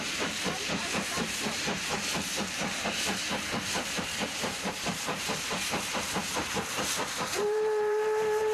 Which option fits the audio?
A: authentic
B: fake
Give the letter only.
B